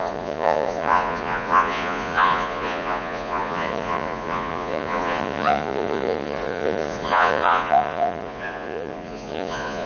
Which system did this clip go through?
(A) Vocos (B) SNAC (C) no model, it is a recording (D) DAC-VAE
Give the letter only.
A